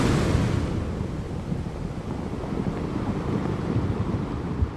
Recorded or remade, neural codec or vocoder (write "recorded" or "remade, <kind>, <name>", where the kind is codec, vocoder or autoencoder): recorded